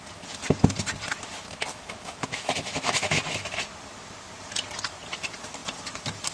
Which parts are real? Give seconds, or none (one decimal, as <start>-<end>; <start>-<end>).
0.0-1.7; 3.2-6.3